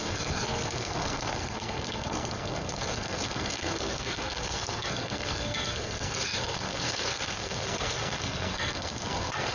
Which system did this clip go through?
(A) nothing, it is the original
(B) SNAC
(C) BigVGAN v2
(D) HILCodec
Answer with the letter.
B